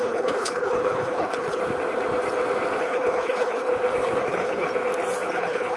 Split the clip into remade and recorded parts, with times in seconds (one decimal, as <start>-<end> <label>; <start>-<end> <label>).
0.0-1.6 remade; 1.6-2.8 recorded; 2.8-3.7 remade; 3.7-4.2 recorded; 4.2-4.7 remade; 4.7-5.3 recorded; 5.3-5.8 remade